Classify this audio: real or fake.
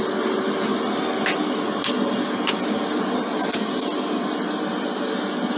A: real